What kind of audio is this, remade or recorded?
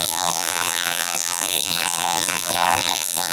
remade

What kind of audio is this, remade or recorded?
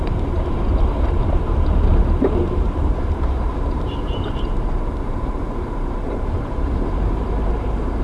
remade